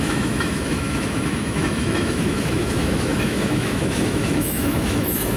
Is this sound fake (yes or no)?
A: yes